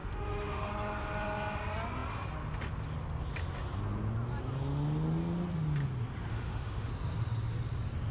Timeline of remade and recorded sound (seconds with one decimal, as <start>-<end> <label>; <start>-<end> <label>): 0.0-0.7 remade; 0.7-6.3 recorded; 6.3-6.9 remade; 6.9-8.1 recorded